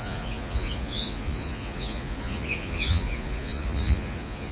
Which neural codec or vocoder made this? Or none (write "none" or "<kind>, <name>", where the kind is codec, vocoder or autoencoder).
vocoder, Vocos